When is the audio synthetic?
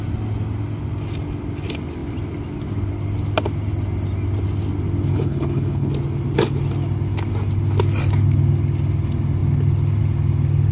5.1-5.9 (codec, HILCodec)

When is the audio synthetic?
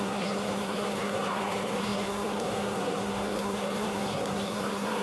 0.0-5.0 (codec, SNAC)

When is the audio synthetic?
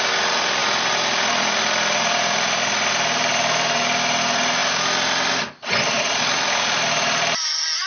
none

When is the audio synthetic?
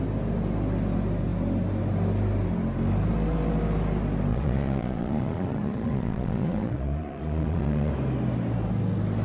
4.3-7.9 (vocoder, Vocos)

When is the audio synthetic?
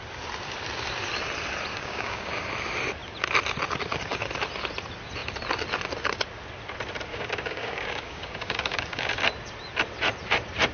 1.7-2.3 (codec, DAC); 7.1-9.1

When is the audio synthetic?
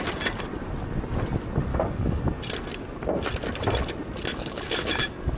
1.7-2.2 (codec, DAC); 4.3-4.9